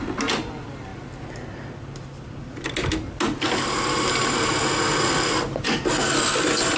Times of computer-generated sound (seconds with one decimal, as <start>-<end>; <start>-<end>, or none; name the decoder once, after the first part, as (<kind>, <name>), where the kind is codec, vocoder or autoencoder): 4.9-6.0 (vocoder, BigVGAN v2)